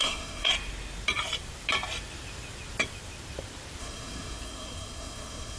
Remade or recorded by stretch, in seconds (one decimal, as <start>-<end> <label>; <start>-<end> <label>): 0.0-0.5 remade; 0.5-3.8 recorded; 3.8-5.6 remade